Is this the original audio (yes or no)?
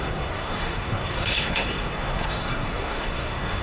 no